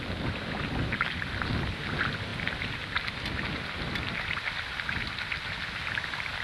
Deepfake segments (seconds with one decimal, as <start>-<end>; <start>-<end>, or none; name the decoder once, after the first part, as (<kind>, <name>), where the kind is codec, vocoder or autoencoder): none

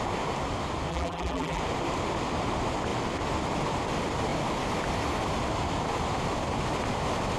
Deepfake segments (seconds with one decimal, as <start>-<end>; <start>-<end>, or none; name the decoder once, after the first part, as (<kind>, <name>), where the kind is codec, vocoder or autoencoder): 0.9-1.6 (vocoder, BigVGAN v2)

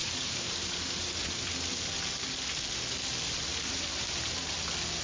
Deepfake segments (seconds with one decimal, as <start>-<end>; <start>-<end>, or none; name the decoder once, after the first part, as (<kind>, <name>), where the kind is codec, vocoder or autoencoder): 0.0-1.5 (vocoder, BigVGAN v2); 3.5-4.3